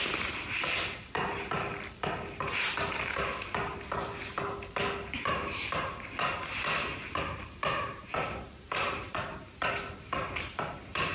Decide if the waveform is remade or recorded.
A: recorded